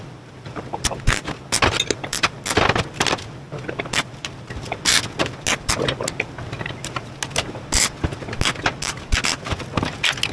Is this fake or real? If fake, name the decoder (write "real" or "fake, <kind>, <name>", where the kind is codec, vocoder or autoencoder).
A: real